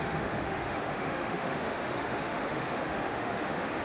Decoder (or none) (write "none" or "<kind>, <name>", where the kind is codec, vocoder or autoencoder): autoencoder, DAC-VAE